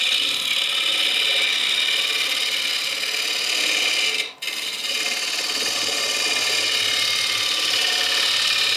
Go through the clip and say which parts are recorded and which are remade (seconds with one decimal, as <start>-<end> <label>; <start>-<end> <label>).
0.0-8.8 recorded